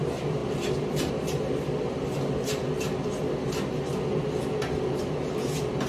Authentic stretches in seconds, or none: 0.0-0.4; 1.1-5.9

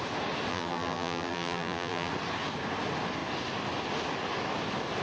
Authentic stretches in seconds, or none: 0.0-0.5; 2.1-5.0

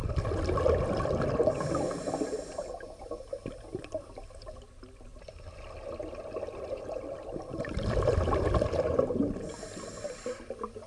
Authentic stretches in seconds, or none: 5.1-6.8